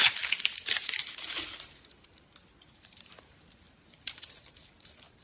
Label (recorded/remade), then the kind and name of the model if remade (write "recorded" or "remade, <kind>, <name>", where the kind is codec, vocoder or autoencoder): remade, vocoder, BigVGAN v2